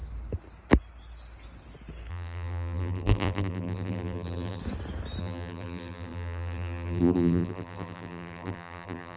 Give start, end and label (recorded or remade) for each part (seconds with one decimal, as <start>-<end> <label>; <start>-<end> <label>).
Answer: 0.0-2.1 recorded; 2.1-4.6 remade; 4.6-5.2 recorded; 5.2-9.2 remade